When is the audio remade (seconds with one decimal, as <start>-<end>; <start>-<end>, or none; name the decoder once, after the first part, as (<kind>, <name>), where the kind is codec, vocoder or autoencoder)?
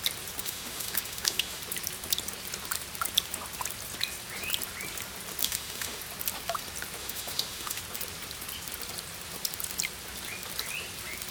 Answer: 0.4-1.6 (autoencoder, DAC-VAE); 5.4-6.0; 7.0-7.8